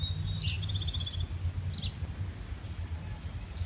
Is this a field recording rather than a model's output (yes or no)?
yes